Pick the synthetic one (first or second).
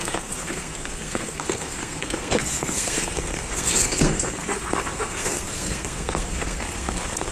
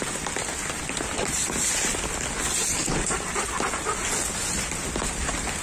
first